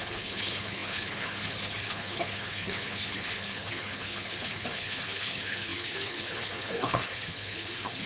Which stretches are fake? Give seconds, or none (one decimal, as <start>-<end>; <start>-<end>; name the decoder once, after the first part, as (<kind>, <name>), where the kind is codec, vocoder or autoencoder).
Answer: 0.0-8.1 (codec, HILCodec)